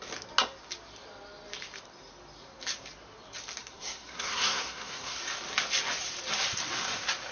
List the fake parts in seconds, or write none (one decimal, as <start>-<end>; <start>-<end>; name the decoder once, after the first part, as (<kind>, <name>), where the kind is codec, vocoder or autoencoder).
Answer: 3.6-5.2 (codec, SNAC)